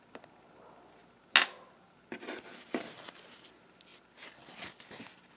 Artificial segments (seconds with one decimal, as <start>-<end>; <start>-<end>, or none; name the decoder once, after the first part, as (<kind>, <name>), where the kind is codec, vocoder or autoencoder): none